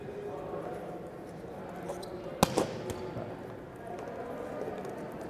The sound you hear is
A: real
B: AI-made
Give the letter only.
A